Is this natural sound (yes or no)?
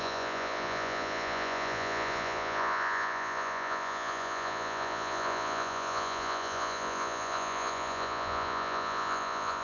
no